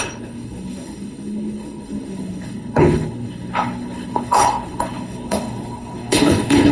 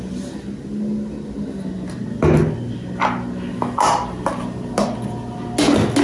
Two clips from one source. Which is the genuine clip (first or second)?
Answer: second